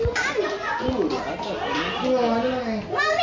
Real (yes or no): yes